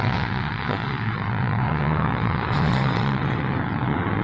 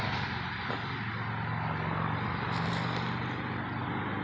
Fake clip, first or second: first